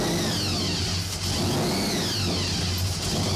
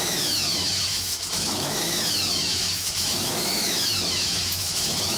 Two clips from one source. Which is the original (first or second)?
first